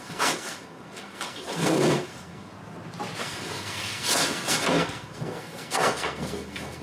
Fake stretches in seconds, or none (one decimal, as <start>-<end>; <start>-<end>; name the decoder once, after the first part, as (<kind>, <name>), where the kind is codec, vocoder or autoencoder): 0.0-2.5 (codec, SNAC); 3.2-6.8